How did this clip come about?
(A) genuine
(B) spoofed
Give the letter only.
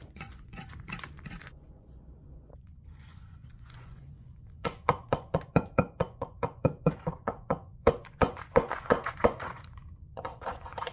B